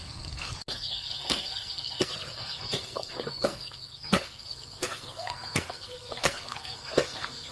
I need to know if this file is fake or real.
fake